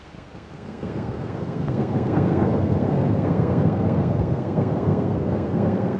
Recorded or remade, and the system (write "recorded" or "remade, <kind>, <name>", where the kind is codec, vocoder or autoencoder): remade, codec, SNAC